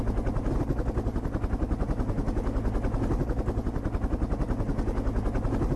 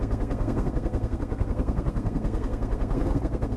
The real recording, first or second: first